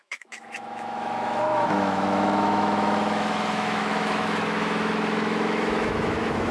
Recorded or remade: remade